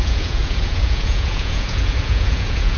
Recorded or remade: remade